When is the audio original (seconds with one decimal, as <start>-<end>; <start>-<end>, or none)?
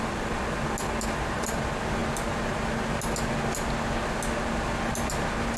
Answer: 0.0-5.6